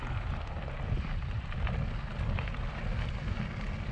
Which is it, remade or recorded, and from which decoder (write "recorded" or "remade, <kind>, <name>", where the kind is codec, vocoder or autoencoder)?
recorded